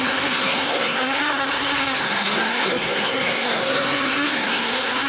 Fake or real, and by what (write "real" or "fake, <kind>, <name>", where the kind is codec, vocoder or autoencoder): fake, codec, SNAC